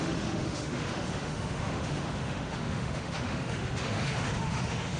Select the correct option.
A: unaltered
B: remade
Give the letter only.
B